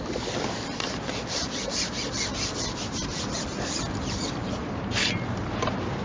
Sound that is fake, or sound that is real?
fake